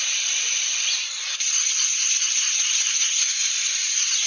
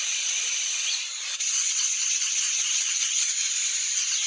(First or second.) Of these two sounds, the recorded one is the first